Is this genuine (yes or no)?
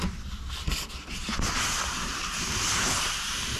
yes